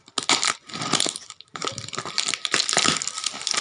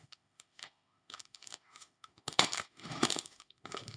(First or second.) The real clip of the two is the first